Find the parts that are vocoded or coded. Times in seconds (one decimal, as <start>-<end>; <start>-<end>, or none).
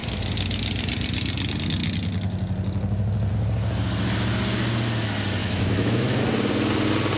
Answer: 5.4-6.2